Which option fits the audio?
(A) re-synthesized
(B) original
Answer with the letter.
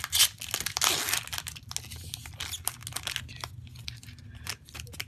B